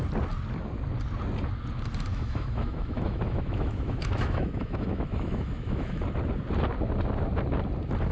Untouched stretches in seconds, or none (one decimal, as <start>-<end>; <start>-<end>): 0.0-2.1; 6.0-8.1